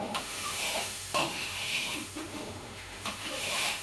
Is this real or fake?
fake